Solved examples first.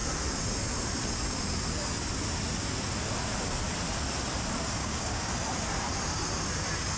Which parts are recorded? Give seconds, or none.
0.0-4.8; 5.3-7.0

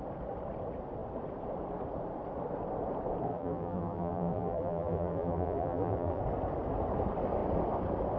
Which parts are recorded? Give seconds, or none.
0.0-3.3; 6.2-8.2

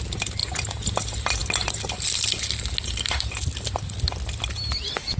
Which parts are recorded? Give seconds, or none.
0.0-5.2